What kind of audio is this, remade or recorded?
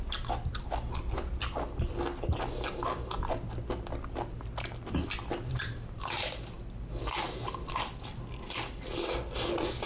recorded